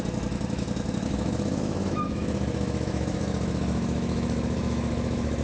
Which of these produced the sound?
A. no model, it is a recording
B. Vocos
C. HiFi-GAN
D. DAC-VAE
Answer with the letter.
D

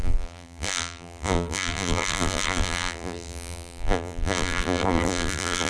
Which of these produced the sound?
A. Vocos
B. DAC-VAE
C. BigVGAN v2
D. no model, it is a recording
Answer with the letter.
C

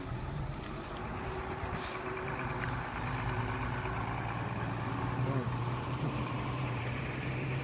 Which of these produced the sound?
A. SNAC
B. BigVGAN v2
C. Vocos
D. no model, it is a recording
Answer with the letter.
B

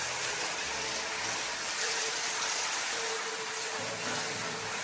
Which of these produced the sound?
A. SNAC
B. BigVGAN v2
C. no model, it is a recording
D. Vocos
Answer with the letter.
C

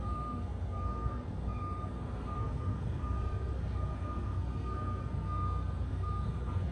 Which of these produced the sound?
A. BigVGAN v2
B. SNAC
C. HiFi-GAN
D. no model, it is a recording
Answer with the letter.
B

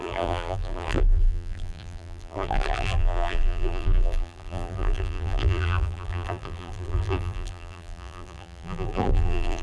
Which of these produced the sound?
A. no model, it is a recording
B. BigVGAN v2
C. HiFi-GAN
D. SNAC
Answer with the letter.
B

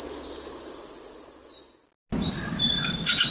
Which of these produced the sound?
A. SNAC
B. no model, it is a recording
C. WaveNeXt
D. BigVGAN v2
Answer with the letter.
B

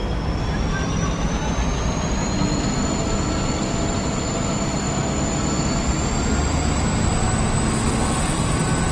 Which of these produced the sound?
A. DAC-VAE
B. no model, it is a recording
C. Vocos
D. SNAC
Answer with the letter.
B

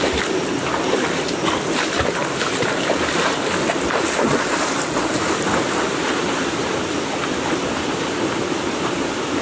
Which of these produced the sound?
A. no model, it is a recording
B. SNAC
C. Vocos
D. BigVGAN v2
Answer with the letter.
D